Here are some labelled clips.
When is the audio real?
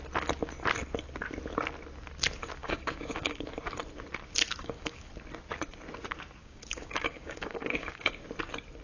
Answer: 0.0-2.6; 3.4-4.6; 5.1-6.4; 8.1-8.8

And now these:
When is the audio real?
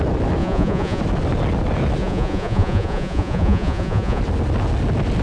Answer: 0.0-0.4; 1.0-2.0; 4.2-5.2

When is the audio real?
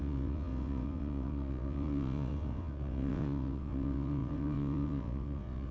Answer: none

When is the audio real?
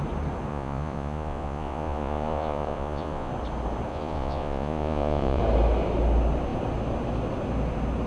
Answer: 0.0-0.5; 3.3-3.9; 5.4-8.1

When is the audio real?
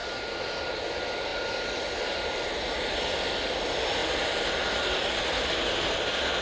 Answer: 0.0-6.4